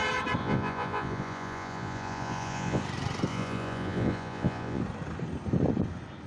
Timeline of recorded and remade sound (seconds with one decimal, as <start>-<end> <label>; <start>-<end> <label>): 0.0-0.4 recorded; 0.4-2.8 remade; 2.8-3.3 recorded; 3.3-4.8 remade; 4.8-6.3 recorded